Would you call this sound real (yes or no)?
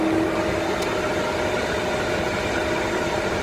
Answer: yes